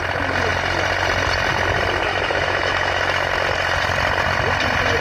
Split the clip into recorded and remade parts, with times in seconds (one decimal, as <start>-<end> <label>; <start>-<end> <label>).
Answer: 0.0-2.1 recorded; 2.1-3.3 remade; 3.3-5.0 recorded

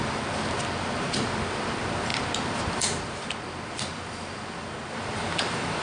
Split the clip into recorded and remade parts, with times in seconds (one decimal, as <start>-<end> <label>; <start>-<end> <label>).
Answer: 0.0-5.8 recorded

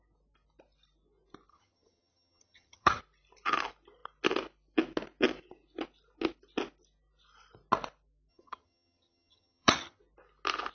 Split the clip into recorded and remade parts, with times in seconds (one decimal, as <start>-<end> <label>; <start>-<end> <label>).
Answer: 0.0-1.5 recorded; 1.5-3.0 remade; 3.0-8.3 recorded; 8.3-10.0 remade; 10.0-10.7 recorded

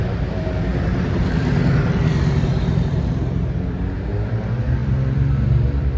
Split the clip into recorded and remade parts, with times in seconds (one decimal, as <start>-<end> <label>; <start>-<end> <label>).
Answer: 0.0-0.7 recorded; 0.7-4.3 remade; 4.3-4.8 recorded; 4.8-6.0 remade

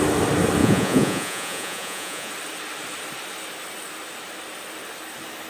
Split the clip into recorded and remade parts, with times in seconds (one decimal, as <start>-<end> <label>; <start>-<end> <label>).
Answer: 0.0-0.6 recorded; 0.6-2.3 remade; 2.3-5.5 recorded